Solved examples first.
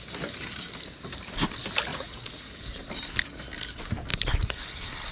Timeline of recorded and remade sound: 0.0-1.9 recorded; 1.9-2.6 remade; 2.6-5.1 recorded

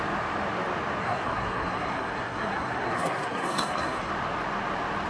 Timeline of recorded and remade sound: 0.0-1.0 recorded; 1.0-4.1 remade; 4.1-5.1 recorded